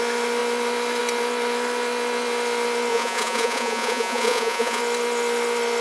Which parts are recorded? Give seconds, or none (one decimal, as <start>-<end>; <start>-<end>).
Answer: 0.0-2.9; 4.8-5.8